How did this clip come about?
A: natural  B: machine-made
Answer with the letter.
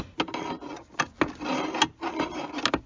A